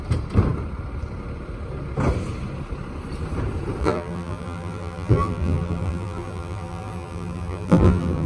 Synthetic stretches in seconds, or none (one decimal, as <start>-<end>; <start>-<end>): 3.8-8.3